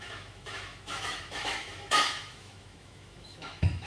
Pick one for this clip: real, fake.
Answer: fake